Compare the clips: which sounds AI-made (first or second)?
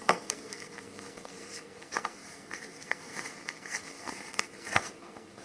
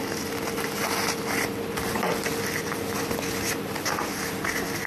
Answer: first